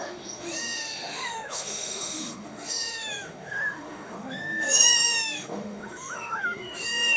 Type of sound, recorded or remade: remade